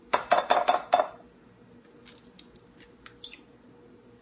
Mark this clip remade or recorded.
recorded